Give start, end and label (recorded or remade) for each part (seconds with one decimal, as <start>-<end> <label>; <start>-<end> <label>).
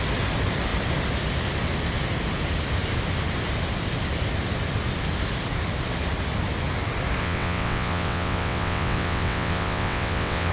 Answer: 0.0-7.2 recorded; 7.2-10.5 remade